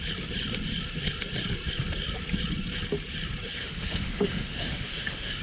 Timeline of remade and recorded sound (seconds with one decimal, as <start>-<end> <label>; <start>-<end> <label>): 0.0-3.6 recorded; 3.6-5.4 remade